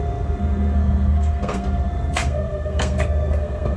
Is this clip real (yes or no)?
no